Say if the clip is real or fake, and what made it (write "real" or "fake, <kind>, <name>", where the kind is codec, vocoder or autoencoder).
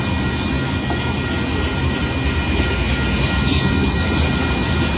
real